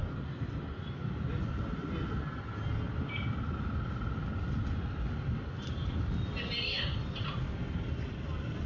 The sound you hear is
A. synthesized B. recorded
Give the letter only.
B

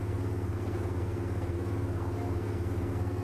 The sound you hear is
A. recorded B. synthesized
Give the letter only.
B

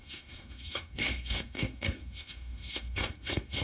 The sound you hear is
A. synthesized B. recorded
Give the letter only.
A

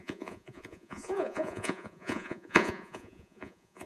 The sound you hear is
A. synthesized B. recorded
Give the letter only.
A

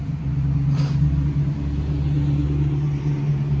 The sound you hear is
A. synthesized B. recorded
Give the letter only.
B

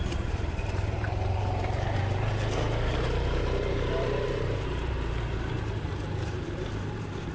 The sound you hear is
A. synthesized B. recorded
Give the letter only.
A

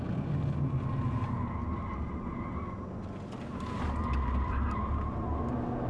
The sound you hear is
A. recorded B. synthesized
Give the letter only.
A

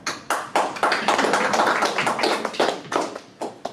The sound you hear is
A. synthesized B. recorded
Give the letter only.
B